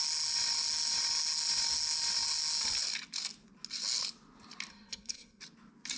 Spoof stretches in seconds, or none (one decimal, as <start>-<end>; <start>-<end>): 4.7-5.4